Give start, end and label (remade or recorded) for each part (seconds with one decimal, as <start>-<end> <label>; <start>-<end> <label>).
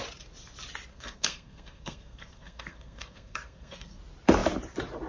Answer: 0.0-0.9 recorded; 0.9-4.0 remade; 4.0-5.1 recorded